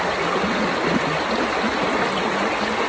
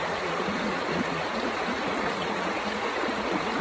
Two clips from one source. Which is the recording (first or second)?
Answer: first